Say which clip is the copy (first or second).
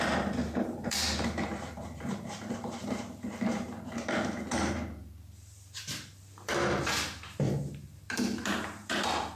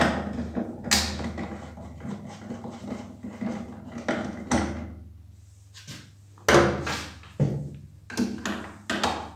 first